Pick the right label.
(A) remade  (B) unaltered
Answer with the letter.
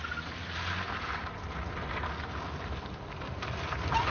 B